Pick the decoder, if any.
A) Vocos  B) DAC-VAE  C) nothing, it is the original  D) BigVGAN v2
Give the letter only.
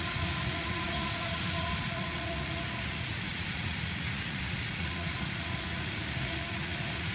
A